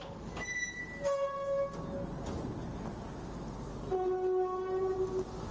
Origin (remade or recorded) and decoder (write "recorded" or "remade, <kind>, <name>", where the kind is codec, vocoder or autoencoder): recorded